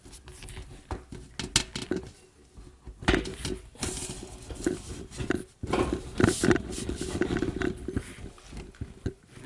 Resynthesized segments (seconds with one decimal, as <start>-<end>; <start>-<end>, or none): 3.3-8.0